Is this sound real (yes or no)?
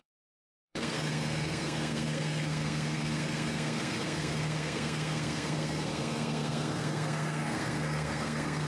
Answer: no